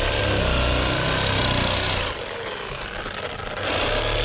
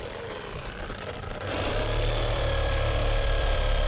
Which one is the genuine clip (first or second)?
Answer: first